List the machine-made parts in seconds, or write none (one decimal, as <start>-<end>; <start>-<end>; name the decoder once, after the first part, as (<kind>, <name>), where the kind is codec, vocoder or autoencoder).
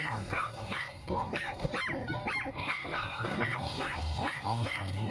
0.0-1.7 (codec, SNAC); 2.5-5.1